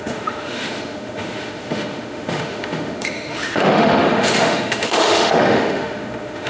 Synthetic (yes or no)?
yes